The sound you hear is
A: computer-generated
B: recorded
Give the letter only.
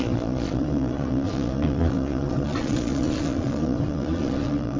A